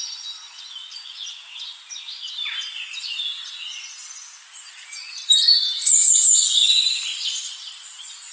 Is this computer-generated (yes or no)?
no